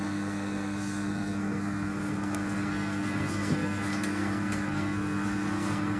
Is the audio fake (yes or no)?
yes